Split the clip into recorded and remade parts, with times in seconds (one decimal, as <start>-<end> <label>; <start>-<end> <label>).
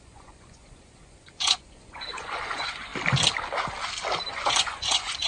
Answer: 0.0-2.9 remade; 2.9-4.3 recorded; 4.3-5.3 remade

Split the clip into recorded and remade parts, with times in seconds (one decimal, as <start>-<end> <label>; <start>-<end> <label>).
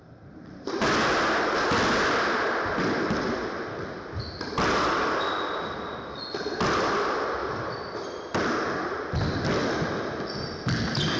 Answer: 0.0-7.4 recorded; 7.4-8.5 remade; 8.5-11.2 recorded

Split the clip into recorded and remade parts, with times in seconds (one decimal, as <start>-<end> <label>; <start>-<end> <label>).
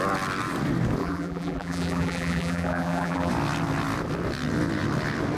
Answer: 0.0-1.0 recorded; 1.0-3.3 remade; 3.3-5.4 recorded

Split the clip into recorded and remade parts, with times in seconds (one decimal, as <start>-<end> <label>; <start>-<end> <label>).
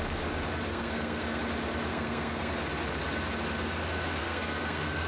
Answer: 0.0-0.7 recorded; 0.7-1.4 remade; 1.4-1.9 recorded; 1.9-2.5 remade; 2.5-4.2 recorded; 4.2-5.1 remade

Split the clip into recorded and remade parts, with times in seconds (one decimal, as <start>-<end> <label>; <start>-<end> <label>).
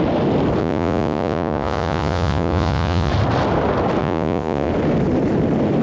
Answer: 0.0-0.6 recorded; 0.6-3.1 remade; 3.1-4.0 recorded; 4.0-4.7 remade; 4.7-5.8 recorded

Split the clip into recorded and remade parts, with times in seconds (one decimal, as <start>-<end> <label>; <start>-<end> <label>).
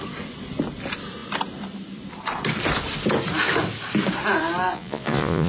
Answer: 0.0-4.7 recorded; 4.7-5.5 remade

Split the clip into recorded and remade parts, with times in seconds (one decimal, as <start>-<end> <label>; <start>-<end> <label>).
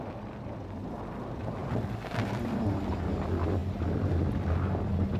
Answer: 0.0-1.6 recorded; 1.6-3.0 remade; 3.0-5.2 recorded